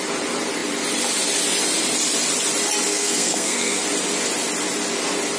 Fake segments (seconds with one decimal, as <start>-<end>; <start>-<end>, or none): 2.9-3.8